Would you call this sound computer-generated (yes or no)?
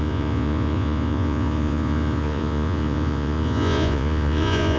yes